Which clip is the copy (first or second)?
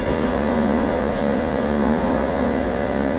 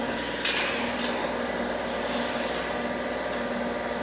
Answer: first